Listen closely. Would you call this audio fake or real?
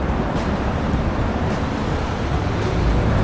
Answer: fake